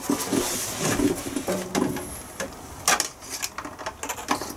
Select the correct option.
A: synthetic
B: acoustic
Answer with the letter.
B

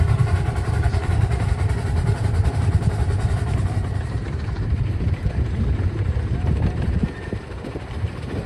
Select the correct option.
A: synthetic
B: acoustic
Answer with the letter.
A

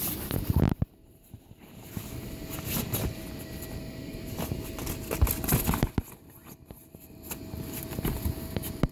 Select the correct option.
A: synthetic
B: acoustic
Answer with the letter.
B